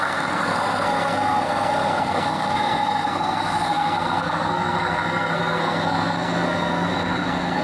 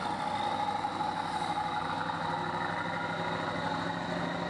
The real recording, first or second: second